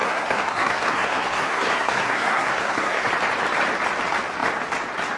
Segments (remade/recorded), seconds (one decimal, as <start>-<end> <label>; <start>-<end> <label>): 0.0-3.1 remade; 3.1-5.2 recorded